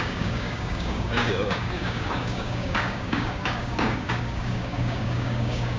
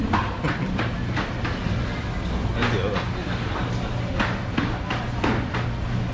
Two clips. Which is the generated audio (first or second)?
first